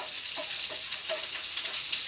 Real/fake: fake